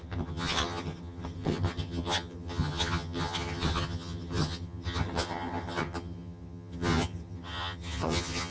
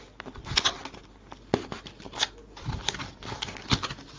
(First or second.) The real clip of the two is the second